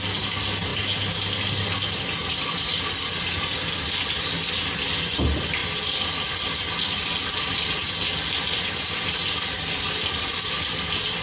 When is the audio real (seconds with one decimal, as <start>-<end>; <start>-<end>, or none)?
0.0-11.2